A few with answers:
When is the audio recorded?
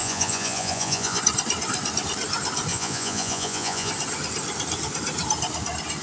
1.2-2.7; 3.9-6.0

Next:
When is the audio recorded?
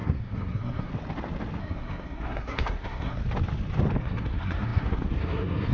0.9-1.6; 3.2-4.0